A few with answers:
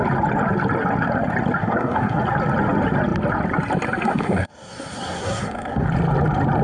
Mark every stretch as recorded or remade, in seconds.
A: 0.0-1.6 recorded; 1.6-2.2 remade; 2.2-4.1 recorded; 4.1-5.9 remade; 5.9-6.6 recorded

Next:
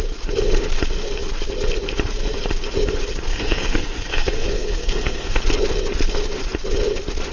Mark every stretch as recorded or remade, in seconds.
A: 0.0-3.3 recorded; 3.3-5.4 remade; 5.4-7.3 recorded

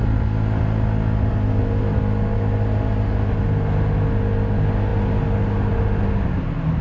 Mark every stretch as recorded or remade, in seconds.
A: 0.0-6.8 recorded

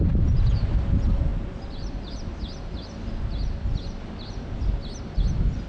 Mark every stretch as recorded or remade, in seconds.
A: 0.0-5.7 recorded

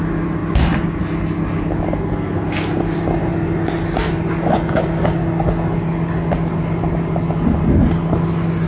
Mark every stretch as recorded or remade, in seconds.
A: 0.0-8.7 recorded

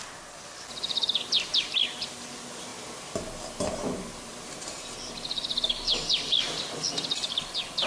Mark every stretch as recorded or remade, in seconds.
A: 0.0-7.9 recorded